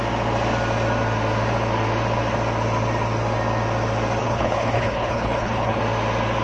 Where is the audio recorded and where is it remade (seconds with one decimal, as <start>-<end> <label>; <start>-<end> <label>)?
0.0-4.2 recorded; 4.2-5.8 remade; 5.8-6.4 recorded